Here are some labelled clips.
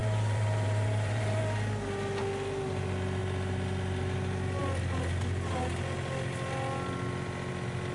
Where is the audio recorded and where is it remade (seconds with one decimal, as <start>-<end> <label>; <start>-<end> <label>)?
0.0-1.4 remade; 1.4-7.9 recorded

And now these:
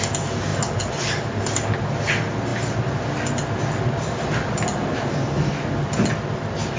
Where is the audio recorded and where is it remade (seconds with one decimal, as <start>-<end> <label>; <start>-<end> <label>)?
0.0-6.8 recorded

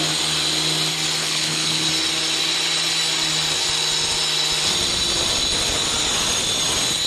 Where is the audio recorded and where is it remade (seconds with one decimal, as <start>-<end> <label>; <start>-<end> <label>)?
0.0-1.2 recorded; 1.2-1.9 remade; 1.9-7.1 recorded

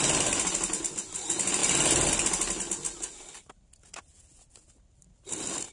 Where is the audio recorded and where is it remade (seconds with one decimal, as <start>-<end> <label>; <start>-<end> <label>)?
0.0-5.7 recorded